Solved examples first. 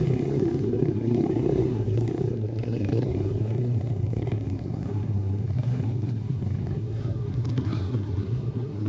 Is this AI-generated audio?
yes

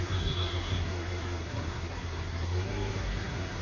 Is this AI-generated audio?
yes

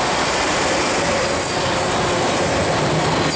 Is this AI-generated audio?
no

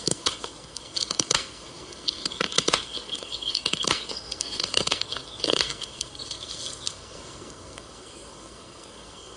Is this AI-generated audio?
yes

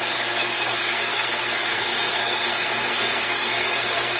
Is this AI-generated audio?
yes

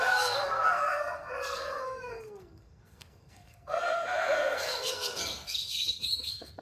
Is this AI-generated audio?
yes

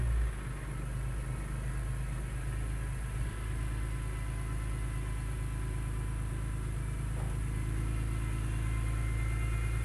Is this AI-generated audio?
no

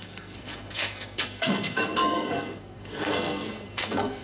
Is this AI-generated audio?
yes